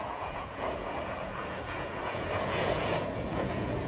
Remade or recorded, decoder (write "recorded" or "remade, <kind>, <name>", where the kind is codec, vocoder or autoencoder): remade, vocoder, Vocos